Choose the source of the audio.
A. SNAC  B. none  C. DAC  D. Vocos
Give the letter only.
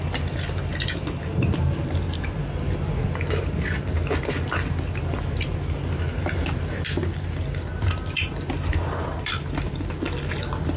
B